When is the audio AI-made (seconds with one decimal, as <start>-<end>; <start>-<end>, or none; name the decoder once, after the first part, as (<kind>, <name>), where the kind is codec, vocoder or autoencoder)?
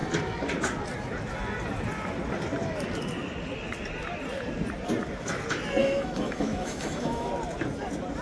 5.8-7.3 (autoencoder, DAC-VAE)